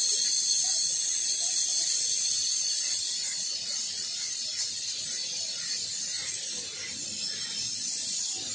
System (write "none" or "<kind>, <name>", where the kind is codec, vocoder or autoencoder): none